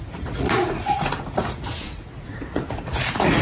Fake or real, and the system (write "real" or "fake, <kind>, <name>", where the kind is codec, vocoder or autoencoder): fake, vocoder, Vocos